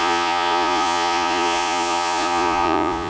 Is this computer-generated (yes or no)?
yes